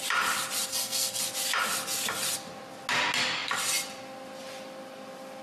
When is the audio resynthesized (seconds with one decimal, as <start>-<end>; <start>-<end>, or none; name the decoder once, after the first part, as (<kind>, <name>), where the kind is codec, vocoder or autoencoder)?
0.7-1.2 (codec, SNAC)